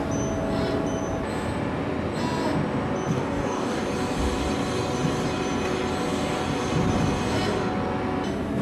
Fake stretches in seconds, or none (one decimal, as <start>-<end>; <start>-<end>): 3.1-3.8